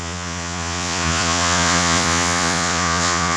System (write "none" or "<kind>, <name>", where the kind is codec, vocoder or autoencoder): vocoder, Vocos